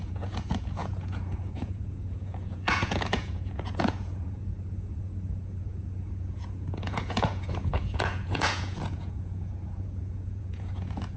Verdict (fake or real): fake